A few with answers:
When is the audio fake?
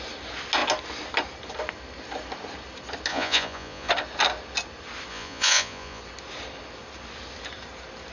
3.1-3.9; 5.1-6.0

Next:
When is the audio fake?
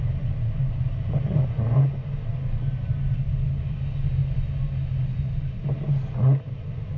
none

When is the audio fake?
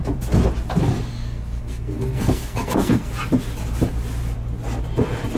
1.1-3.1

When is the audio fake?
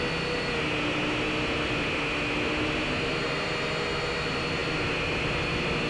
none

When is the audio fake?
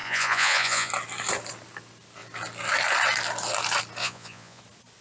0.0-0.9; 4.0-4.6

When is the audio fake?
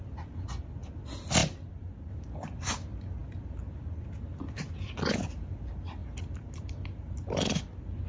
none